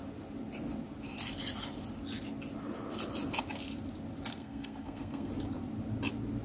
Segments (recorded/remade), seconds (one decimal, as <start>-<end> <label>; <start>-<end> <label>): 0.0-4.3 recorded; 4.3-5.3 remade; 5.3-6.4 recorded